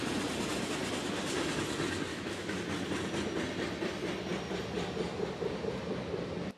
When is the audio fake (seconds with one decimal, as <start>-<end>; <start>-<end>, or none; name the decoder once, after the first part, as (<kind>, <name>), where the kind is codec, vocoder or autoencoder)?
2.1-2.6 (autoencoder, DAC-VAE)